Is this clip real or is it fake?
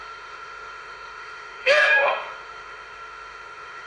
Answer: fake